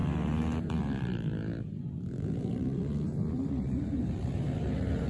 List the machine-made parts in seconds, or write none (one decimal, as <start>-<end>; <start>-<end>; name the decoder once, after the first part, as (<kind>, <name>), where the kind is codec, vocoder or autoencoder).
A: 0.6-5.1 (vocoder, BigVGAN v2)